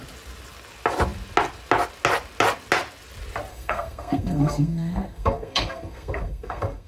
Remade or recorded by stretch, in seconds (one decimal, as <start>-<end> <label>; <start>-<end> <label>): 0.0-3.5 recorded; 3.5-6.9 remade